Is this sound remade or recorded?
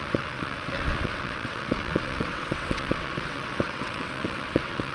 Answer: remade